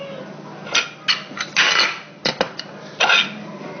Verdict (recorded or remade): recorded